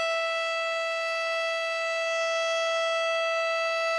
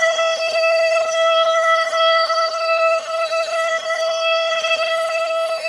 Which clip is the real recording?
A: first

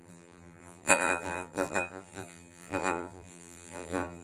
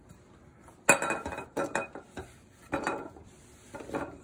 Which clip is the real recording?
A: second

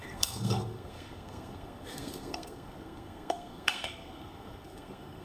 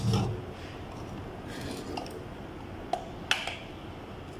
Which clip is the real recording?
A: second